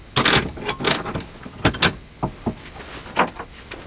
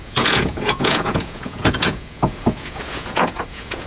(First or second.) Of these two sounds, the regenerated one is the second